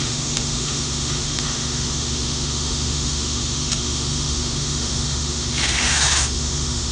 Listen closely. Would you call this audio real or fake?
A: fake